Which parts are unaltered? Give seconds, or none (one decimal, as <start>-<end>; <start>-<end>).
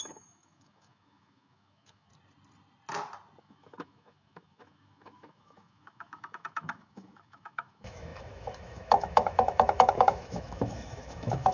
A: 2.1-3.4